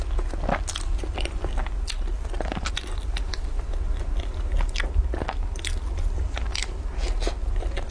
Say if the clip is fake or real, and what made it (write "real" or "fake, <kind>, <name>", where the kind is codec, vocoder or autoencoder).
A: real